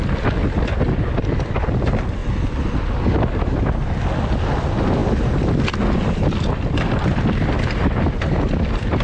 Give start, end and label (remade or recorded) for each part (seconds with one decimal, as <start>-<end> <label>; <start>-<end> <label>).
0.0-9.0 recorded